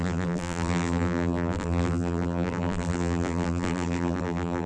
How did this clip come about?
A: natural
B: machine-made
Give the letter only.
B